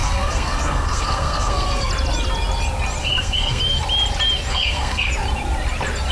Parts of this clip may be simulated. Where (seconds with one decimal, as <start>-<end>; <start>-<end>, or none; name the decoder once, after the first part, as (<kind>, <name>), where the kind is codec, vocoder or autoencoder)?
0.0-1.9 (codec, SNAC); 3.0-3.6; 4.5-5.1